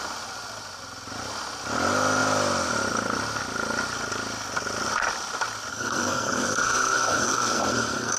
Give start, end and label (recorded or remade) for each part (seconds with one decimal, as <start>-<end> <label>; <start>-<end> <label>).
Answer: 0.0-5.7 recorded; 5.7-8.2 remade